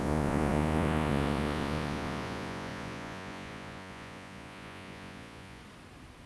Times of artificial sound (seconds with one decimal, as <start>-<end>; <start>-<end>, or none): 0.0-5.6